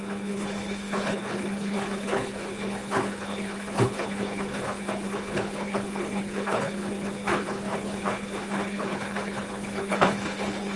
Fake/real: fake